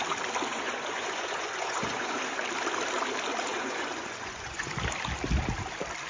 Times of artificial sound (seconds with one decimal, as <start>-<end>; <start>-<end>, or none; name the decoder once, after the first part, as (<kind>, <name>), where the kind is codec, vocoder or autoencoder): 0.5-2.3 (vocoder, Vocos); 3.5-4.7